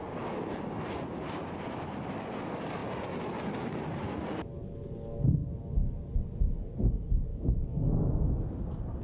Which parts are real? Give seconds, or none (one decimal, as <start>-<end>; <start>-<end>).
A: 0.0-7.3; 8.4-9.0